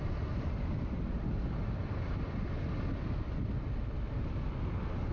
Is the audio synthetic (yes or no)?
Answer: no